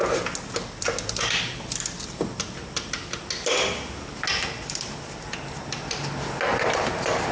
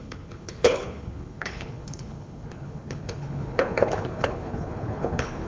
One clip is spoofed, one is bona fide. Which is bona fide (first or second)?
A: first